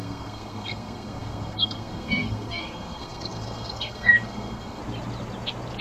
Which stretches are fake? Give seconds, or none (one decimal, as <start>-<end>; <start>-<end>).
0.0-4.8